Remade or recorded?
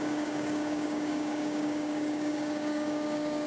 remade